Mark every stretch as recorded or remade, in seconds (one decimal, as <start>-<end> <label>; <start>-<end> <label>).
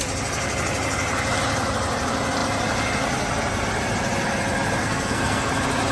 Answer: 0.0-4.8 recorded; 4.8-5.5 remade; 5.5-5.9 recorded